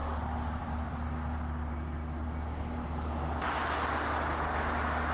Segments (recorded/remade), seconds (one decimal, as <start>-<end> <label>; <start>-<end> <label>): 0.0-1.7 remade; 1.7-5.1 recorded